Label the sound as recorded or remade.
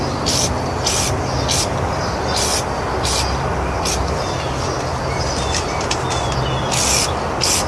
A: recorded